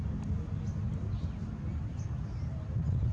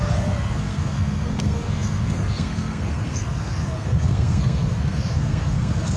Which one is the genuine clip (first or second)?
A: first